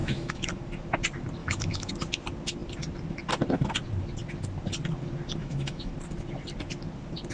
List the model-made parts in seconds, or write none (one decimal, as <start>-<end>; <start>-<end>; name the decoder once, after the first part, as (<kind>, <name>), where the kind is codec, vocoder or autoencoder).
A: 0.0-0.5 (autoencoder, DAC-VAE); 1.4-1.9; 5.4-5.9